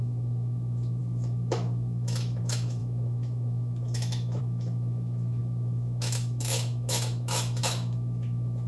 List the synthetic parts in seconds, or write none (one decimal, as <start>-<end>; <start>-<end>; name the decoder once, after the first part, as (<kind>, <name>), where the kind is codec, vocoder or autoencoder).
0.0-8.7 (autoencoder, DAC-VAE)